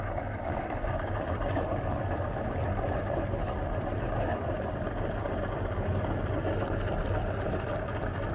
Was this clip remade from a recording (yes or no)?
yes